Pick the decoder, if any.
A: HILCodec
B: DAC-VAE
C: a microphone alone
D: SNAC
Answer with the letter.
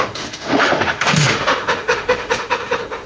B